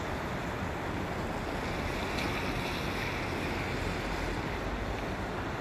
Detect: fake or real real